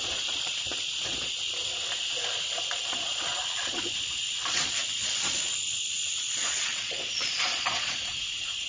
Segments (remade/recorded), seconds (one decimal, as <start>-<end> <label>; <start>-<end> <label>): 0.0-1.6 remade; 1.6-2.3 recorded; 2.3-8.7 remade

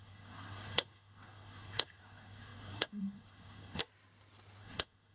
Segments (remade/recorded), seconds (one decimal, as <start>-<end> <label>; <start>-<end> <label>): 0.0-3.8 remade; 3.8-4.6 recorded; 4.6-5.1 remade

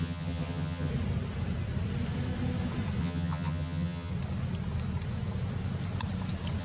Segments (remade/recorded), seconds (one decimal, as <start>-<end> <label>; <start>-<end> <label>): 0.0-0.9 remade; 0.9-3.0 recorded; 3.0-4.1 remade; 4.1-6.6 recorded